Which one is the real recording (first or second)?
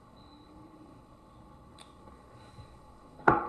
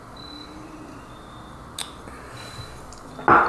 second